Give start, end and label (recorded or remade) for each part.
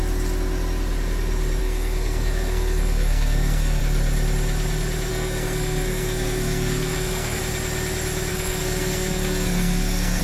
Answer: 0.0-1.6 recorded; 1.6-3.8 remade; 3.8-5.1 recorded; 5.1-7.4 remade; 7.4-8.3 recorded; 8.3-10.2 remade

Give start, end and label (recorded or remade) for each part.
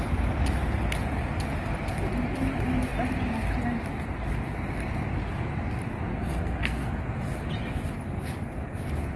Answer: 0.0-6.1 recorded; 6.1-7.0 remade; 7.0-9.2 recorded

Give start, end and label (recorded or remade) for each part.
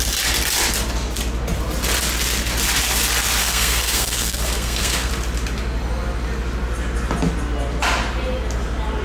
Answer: 0.0-3.4 recorded; 3.4-5.1 remade; 5.1-9.0 recorded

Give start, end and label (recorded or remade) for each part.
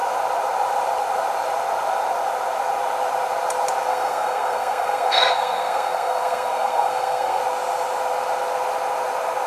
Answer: 0.0-3.9 recorded; 3.9-7.4 remade; 7.4-9.5 recorded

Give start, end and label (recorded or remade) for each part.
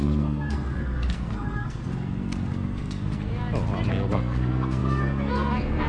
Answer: 0.0-3.3 remade; 3.3-3.9 recorded; 3.9-5.9 remade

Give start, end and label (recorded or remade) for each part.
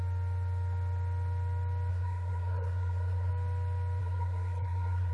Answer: 0.0-1.9 recorded; 1.9-3.3 remade; 3.3-4.0 recorded; 4.0-5.1 remade